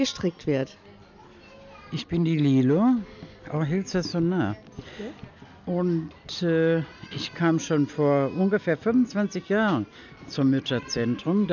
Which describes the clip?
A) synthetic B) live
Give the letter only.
B